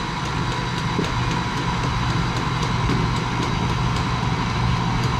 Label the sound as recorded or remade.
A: remade